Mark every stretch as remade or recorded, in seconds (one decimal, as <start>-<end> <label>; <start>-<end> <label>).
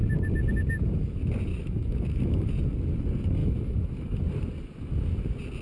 0.0-1.5 recorded; 1.5-2.5 remade; 2.5-3.4 recorded; 3.4-4.2 remade; 4.2-5.6 recorded